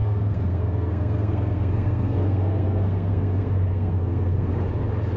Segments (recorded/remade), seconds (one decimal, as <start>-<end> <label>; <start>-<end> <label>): 0.0-4.5 remade; 4.5-5.2 recorded